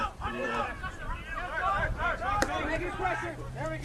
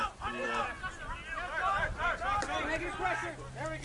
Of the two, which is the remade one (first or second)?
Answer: first